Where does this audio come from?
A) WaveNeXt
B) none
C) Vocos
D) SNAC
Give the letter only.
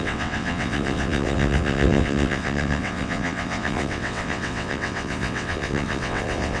A